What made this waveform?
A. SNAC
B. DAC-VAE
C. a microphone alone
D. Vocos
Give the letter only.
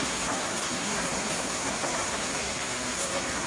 A